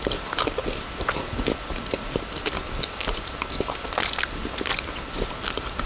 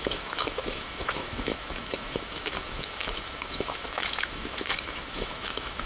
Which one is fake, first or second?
second